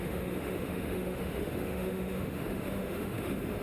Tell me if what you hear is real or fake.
fake